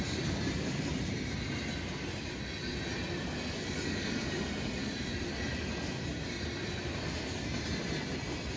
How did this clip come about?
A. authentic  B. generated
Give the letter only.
A